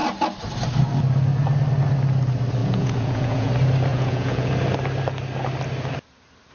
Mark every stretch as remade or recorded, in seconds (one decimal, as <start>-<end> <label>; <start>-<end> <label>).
0.0-2.6 recorded; 2.6-3.5 remade; 3.5-3.9 recorded; 3.9-4.5 remade; 4.5-6.5 recorded